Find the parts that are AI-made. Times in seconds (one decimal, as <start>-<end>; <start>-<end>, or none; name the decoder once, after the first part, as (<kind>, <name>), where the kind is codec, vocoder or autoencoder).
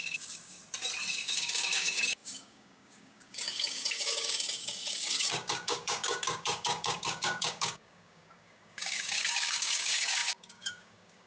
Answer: 0.0-0.6 (codec, DAC); 1.1-11.3